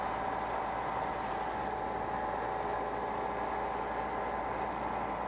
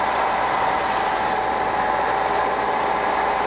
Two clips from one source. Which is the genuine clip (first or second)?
first